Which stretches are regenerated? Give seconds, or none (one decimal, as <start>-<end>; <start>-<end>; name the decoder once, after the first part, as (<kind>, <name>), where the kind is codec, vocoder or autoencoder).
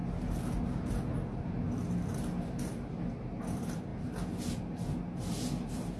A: none